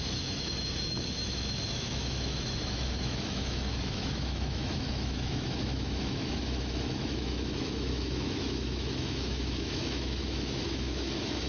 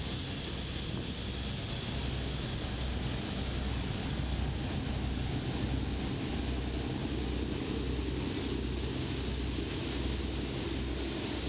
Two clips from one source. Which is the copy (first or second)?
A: first